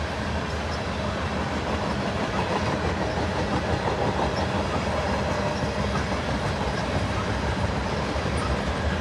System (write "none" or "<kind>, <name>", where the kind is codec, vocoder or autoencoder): none